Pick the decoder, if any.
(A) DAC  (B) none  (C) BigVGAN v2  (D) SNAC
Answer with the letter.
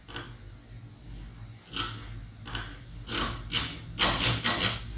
B